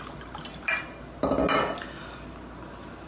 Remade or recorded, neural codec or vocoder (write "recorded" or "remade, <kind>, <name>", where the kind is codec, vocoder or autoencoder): recorded